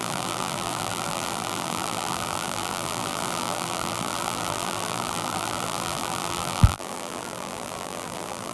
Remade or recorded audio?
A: remade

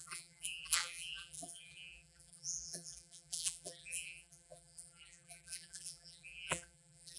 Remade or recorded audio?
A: remade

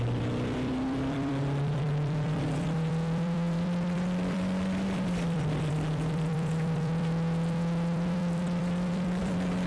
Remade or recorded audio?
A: remade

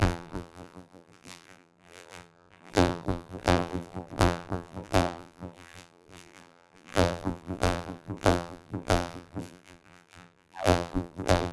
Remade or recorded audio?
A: remade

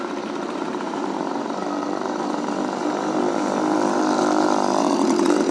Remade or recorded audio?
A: remade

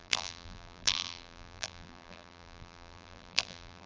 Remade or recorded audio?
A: remade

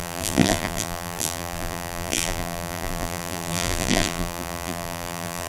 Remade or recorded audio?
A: remade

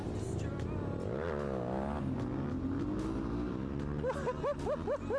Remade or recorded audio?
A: recorded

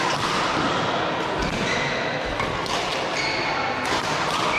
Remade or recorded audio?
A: recorded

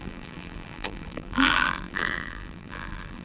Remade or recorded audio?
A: remade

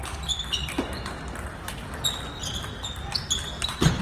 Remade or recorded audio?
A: recorded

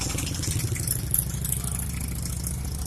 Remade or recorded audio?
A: recorded